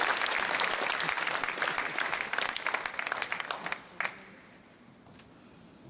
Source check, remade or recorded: recorded